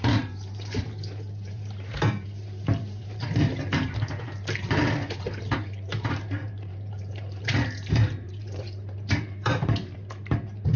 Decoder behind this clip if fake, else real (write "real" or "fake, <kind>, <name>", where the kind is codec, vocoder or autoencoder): fake, vocoder, BigVGAN v2